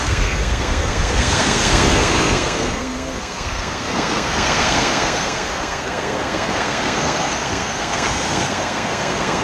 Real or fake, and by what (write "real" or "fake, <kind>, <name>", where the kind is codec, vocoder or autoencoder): fake, codec, SNAC